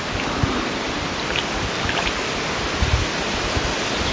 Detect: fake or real real